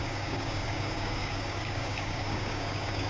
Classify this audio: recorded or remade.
remade